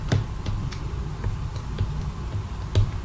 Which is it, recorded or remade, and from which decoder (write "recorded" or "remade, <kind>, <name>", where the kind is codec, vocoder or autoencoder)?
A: recorded